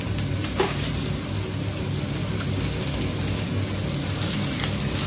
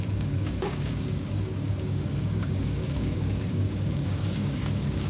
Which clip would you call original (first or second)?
first